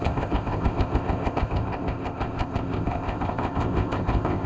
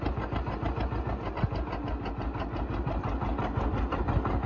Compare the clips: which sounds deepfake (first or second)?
first